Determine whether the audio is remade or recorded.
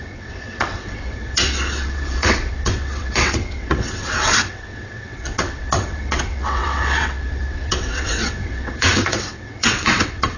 remade